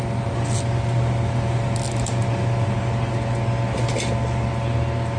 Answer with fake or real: real